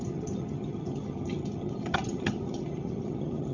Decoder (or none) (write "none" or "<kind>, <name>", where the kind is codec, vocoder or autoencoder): vocoder, HiFi-GAN